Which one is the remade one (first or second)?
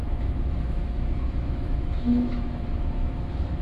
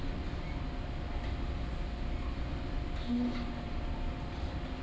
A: first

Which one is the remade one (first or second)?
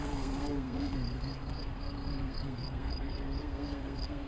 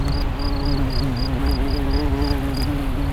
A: first